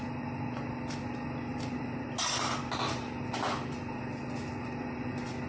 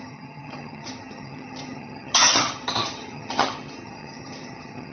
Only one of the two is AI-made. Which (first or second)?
second